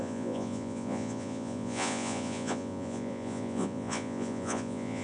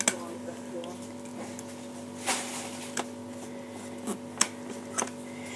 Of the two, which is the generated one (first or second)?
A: first